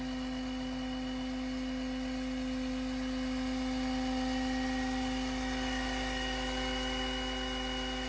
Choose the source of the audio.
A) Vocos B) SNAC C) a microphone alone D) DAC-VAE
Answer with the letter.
C